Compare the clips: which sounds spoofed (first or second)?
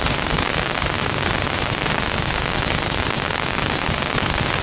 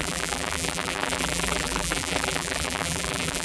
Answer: second